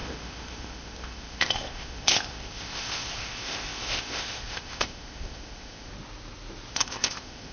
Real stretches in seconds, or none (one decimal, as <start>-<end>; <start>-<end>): 5.9-6.7